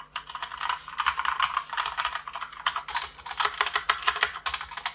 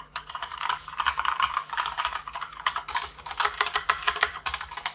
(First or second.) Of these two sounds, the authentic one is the first